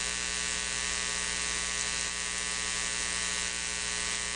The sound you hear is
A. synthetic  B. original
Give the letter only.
B